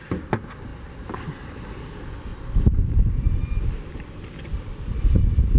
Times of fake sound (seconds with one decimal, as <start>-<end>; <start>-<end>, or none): 0.7-1.6; 2.3-2.9